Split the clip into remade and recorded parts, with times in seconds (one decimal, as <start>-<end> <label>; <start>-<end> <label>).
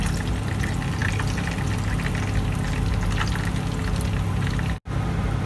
0.0-5.5 recorded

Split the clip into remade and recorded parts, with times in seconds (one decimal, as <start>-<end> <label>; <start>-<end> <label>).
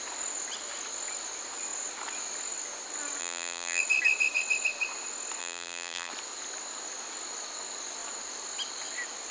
0.0-3.2 recorded; 3.2-3.8 remade; 3.8-5.4 recorded; 5.4-6.1 remade; 6.1-9.3 recorded